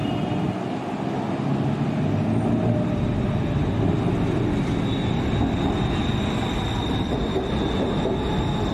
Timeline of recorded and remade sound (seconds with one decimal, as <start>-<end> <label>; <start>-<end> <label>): 0.0-8.7 recorded